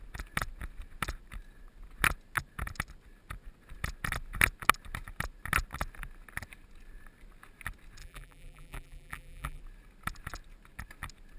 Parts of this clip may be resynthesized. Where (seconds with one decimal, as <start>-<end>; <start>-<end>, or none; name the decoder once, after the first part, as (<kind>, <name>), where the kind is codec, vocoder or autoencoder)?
8.0-9.6 (vocoder, BigVGAN v2)